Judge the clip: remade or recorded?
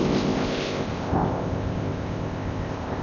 remade